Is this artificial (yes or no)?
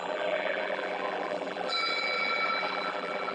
yes